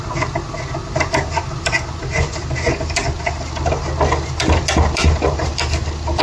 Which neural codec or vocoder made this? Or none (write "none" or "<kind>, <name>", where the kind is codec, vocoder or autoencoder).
none